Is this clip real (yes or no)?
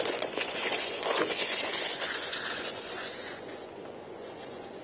no